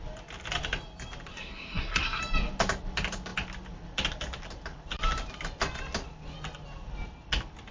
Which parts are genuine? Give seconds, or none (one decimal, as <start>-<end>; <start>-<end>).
0.0-1.3; 2.2-7.7